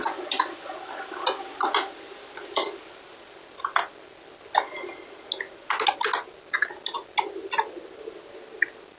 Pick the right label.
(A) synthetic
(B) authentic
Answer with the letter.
B